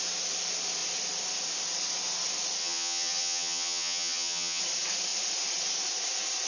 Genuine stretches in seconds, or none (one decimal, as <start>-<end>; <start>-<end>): 0.0-2.6; 4.6-6.5